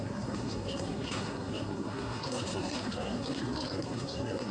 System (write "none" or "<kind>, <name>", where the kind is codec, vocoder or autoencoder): codec, SNAC